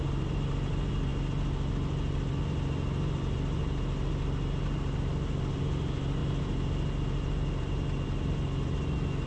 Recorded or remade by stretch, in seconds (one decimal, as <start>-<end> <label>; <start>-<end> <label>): 0.0-9.3 recorded